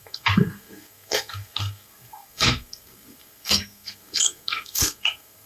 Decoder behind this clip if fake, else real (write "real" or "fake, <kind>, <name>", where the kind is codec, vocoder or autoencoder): fake, codec, SNAC